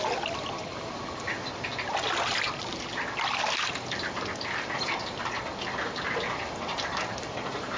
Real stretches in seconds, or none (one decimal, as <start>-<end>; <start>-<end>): 0.7-1.2; 1.7-6.2